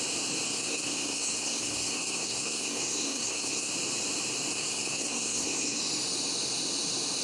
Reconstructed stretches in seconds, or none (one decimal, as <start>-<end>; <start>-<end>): 0.5-3.7; 4.5-5.8